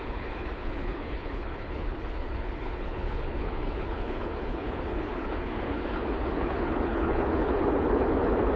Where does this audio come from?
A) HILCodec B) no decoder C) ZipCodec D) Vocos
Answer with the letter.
A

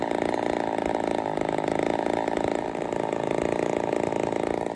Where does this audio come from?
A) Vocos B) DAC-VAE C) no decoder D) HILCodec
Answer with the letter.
C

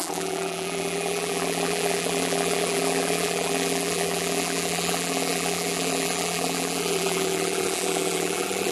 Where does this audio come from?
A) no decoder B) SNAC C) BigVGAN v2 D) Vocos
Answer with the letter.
C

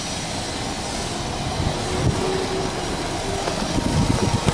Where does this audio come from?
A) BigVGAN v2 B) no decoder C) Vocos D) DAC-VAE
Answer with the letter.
B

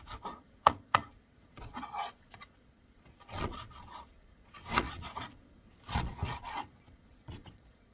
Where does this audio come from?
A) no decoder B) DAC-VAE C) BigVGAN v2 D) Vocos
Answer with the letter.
D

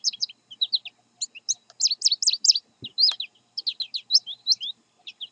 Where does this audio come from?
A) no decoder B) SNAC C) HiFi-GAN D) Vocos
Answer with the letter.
A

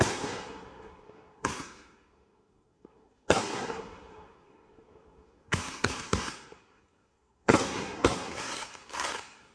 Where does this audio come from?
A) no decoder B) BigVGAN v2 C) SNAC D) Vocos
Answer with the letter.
C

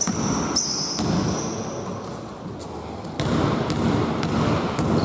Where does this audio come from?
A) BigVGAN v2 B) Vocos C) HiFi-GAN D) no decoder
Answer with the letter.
D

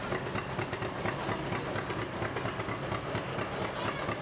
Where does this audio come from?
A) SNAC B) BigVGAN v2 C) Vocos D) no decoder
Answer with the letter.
D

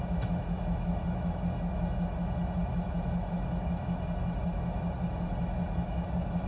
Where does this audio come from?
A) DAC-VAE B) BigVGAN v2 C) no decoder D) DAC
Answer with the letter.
A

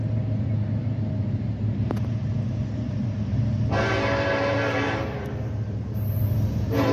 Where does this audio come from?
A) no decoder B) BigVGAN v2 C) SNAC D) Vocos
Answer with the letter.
B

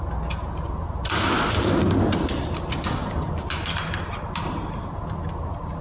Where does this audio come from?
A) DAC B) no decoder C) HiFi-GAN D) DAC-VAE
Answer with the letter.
B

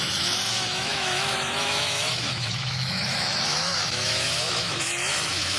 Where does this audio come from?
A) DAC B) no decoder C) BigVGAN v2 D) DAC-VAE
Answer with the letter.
D